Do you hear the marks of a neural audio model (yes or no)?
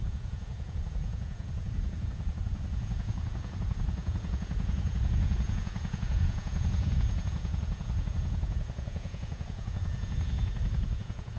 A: yes